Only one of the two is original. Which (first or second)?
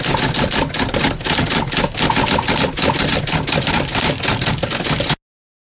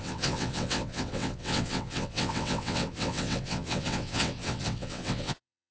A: first